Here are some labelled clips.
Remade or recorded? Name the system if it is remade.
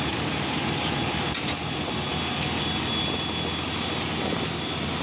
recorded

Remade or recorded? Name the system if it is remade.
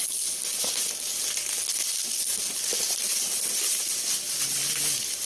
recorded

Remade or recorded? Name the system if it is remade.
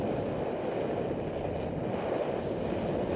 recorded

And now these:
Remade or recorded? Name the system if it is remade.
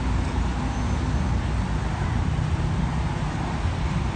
recorded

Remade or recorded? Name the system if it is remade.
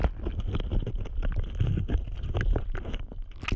recorded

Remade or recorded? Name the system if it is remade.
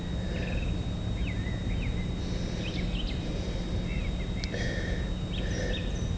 recorded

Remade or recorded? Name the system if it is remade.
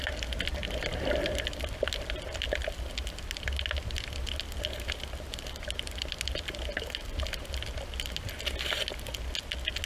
recorded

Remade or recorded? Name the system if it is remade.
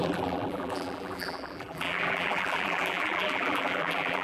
remade, vocoder, BigVGAN v2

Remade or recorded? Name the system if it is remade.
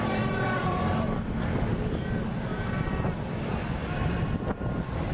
remade, vocoder, BigVGAN v2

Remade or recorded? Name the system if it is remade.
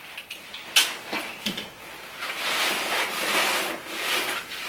recorded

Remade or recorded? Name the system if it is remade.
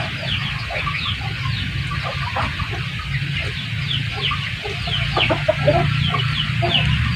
recorded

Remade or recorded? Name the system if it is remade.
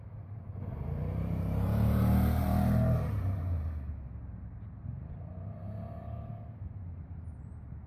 remade, vocoder, BigVGAN v2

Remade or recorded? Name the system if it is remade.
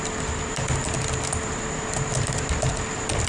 recorded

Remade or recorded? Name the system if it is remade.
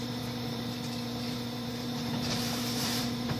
remade, vocoder, BigVGAN v2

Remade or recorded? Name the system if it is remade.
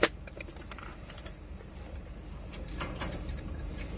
remade, vocoder, BigVGAN v2